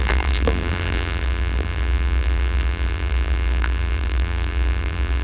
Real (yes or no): no